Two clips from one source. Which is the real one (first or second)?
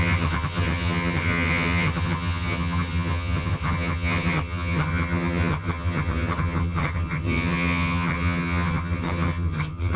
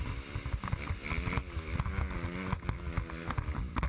second